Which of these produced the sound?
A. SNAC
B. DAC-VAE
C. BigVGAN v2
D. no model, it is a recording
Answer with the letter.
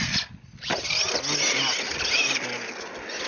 D